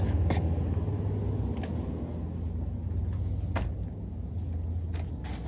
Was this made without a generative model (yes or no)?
yes